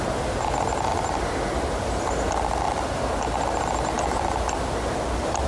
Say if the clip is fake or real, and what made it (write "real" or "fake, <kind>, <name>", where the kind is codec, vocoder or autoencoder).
real